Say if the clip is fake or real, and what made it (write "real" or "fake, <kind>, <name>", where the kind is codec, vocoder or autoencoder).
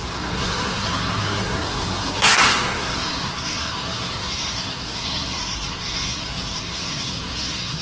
fake, codec, SNAC